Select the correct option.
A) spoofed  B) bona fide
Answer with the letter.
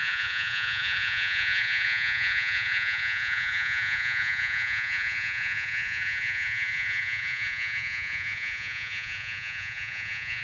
A